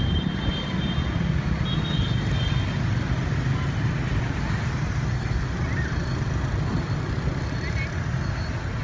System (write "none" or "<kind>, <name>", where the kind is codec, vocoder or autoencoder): none